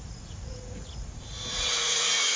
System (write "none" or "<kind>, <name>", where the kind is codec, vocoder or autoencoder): vocoder, Vocos